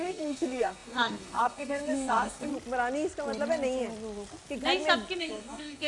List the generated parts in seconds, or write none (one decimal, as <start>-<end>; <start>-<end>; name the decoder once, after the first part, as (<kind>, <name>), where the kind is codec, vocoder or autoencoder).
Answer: 0.0-2.5 (codec, SNAC); 5.2-5.9